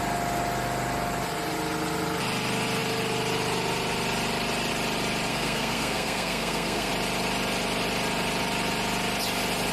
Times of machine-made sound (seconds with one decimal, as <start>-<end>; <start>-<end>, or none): 5.3-6.9